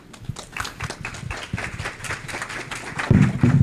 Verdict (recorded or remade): remade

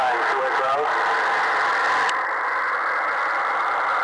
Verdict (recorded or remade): recorded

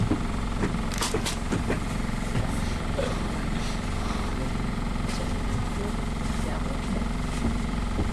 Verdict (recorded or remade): remade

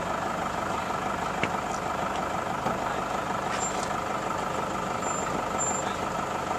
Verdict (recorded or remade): recorded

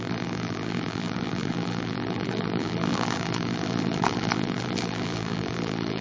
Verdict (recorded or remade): remade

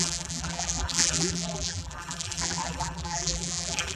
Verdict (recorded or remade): remade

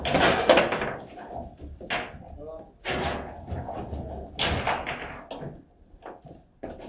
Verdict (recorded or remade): recorded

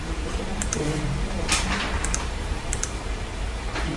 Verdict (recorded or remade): remade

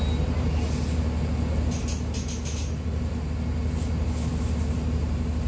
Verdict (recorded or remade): recorded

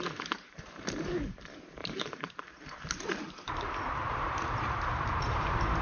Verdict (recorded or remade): remade